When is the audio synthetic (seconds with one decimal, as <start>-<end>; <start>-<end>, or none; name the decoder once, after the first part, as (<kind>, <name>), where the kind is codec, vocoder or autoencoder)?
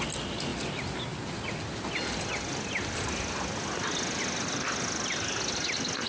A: none